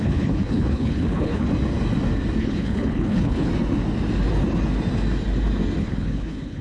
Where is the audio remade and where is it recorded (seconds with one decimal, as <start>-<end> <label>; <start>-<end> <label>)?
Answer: 0.0-1.5 remade; 1.5-2.4 recorded; 2.4-3.5 remade; 3.5-5.8 recorded; 5.8-6.6 remade